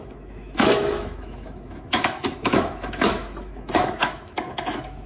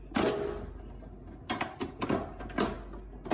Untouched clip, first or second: second